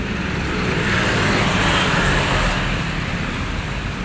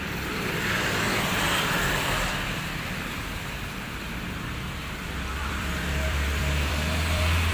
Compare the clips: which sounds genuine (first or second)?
first